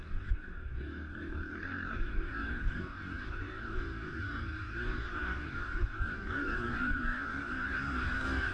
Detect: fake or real fake